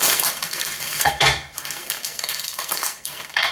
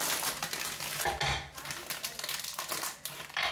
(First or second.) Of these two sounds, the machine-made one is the first